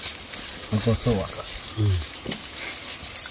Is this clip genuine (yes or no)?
yes